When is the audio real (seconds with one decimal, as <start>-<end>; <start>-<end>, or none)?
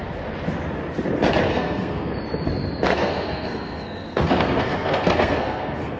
0.0-1.5; 2.1-2.9